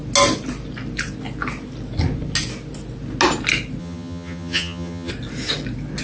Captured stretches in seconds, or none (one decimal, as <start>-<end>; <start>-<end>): 0.0-3.8; 5.1-6.0